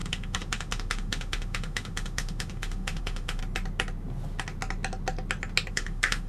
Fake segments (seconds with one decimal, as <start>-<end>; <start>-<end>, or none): 0.0-3.4; 5.7-6.3